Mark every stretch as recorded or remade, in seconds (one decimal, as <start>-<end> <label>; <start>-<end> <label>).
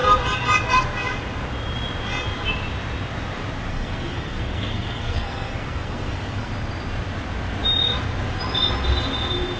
0.0-3.7 recorded; 3.7-6.5 remade; 6.5-9.6 recorded